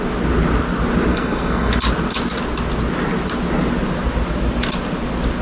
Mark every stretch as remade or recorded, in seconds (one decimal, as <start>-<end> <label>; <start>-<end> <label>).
0.0-1.1 recorded; 1.1-1.7 remade; 1.7-5.4 recorded